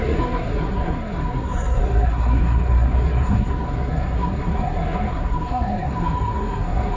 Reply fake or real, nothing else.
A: fake